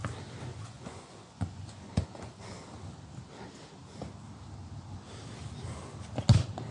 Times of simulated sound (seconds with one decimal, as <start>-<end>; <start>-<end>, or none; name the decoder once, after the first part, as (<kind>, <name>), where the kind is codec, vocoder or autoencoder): 0.5-2.6 (vocoder, Vocos)